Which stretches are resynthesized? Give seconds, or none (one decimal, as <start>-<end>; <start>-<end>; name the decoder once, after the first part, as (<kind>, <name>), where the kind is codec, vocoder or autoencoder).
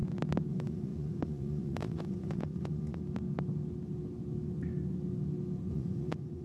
0.5-3.0 (vocoder, Vocos); 5.7-6.4